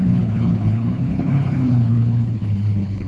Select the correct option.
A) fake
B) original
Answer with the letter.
A